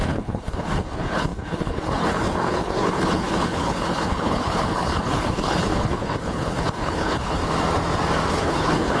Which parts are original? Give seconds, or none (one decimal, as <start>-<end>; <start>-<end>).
7.4-8.3